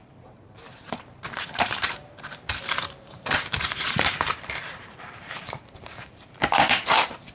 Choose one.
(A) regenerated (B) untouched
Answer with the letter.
A